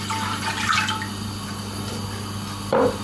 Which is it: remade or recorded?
recorded